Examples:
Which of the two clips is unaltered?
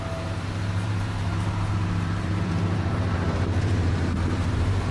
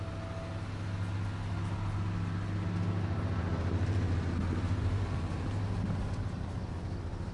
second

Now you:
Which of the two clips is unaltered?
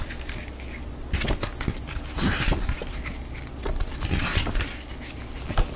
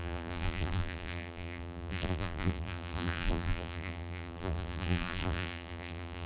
first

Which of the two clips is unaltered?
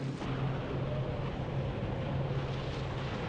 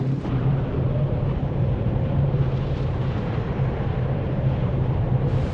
first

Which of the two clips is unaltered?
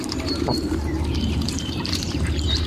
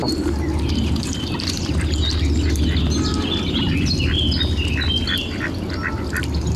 second